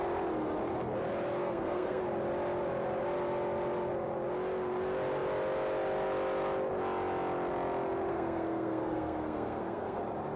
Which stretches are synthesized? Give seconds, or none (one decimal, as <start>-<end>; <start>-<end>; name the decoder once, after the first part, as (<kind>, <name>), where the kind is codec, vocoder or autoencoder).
1.4-2.0 (codec, SNAC); 8.1-10.0